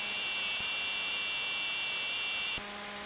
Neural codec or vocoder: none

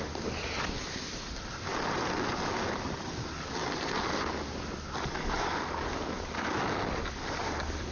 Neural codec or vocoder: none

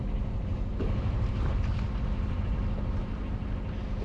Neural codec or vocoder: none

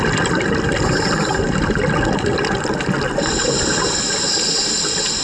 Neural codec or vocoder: none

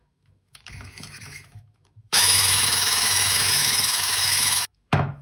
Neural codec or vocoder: autoencoder, DAC-VAE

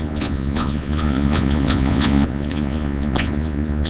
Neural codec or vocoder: vocoder, Vocos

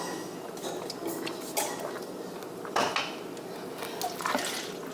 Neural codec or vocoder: none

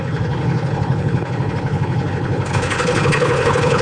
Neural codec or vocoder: codec, HILCodec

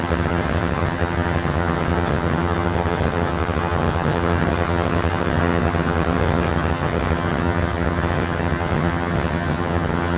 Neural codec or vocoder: vocoder, HiFi-GAN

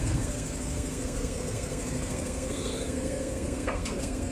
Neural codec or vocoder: codec, SNAC